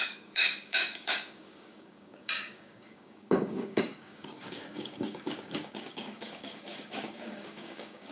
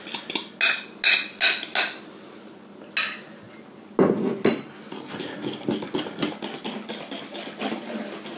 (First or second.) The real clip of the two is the second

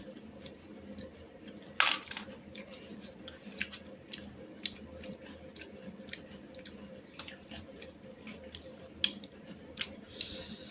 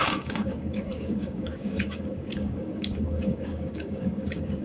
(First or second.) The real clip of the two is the first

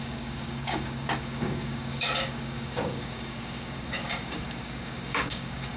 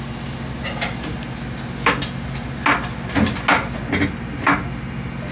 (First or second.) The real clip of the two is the second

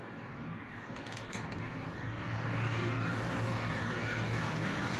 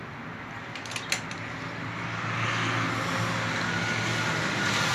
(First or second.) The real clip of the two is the second